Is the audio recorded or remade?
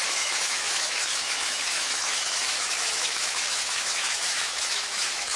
remade